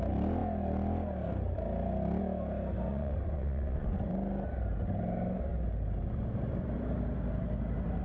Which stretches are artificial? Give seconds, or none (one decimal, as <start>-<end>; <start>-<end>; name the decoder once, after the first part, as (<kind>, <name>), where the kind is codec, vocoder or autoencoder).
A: 2.9-4.1 (vocoder, Vocos)